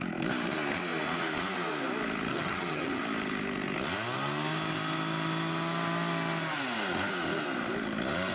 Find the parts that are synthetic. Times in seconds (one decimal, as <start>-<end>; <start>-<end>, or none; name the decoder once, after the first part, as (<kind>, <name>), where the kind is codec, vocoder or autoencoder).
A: 2.3-3.0 (vocoder, HiFi-GAN)